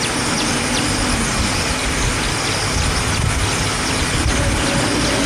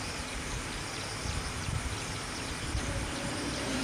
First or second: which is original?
first